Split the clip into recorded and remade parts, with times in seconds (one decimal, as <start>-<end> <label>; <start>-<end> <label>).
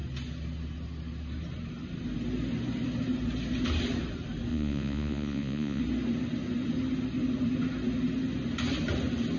0.0-4.5 recorded; 4.5-5.8 remade; 5.8-9.4 recorded